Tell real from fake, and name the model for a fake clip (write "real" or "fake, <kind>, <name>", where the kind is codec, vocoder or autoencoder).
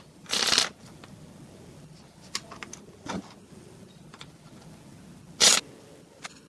real